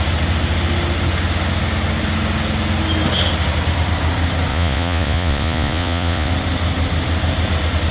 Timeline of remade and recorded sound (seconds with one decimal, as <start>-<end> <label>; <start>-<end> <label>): 0.0-4.5 recorded; 4.5-6.3 remade; 6.3-7.9 recorded